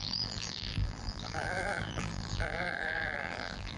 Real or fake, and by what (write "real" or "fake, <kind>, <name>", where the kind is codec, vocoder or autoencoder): fake, vocoder, BigVGAN v2